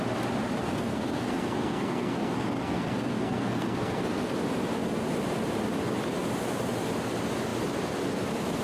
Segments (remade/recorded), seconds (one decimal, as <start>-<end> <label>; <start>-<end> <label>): 0.0-0.6 recorded; 0.6-4.3 remade; 4.3-8.6 recorded